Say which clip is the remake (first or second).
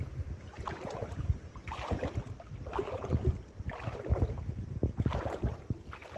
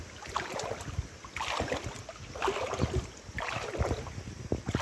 first